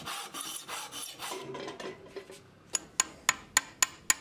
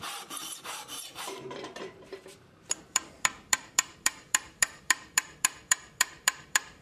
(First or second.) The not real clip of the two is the second